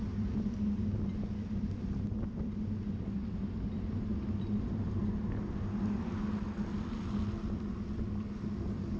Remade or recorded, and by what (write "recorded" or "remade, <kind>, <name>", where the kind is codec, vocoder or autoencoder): recorded